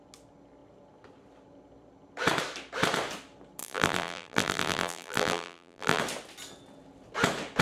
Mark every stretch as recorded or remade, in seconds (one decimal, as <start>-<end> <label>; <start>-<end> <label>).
0.0-3.6 recorded; 3.6-6.0 remade; 6.0-7.6 recorded